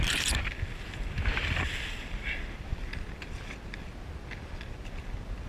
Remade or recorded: recorded